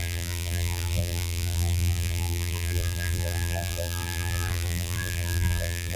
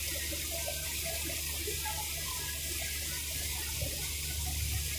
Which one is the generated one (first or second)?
first